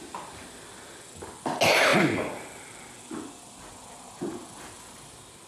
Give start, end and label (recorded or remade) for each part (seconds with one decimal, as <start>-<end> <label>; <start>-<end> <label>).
0.0-5.5 recorded